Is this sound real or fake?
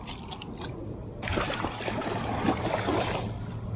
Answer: fake